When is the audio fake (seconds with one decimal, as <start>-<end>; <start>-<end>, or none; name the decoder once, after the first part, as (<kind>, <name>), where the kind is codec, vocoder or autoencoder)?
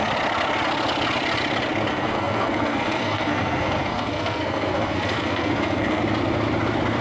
1.9-6.0 (codec, SNAC)